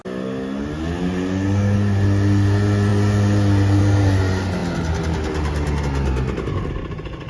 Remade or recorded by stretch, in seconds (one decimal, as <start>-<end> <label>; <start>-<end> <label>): 0.0-7.3 recorded